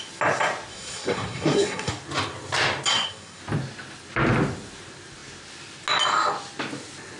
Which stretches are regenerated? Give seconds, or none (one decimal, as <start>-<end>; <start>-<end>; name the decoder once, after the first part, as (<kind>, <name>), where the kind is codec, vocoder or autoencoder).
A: 0.7-1.9 (codec, SNAC); 2.9-3.4

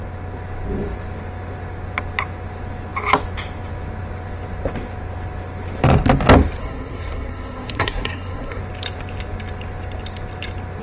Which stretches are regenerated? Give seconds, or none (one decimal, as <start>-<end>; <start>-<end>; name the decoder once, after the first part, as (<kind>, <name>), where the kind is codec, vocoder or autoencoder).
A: 6.6-8.6 (codec, SNAC)